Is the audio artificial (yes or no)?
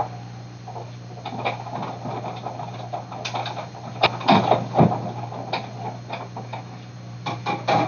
no